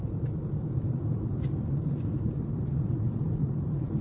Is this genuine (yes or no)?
no